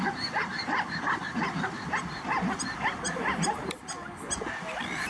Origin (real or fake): real